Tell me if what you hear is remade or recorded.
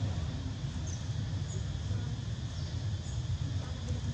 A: recorded